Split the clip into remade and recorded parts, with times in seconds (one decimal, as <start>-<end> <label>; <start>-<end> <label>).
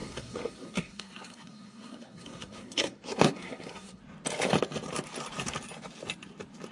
0.0-4.0 remade; 4.0-6.7 recorded